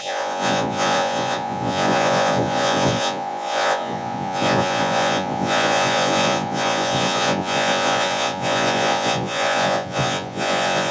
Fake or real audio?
fake